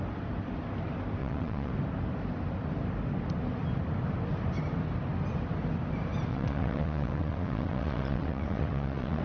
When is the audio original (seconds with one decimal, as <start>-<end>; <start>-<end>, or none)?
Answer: 0.0-1.2; 1.7-6.3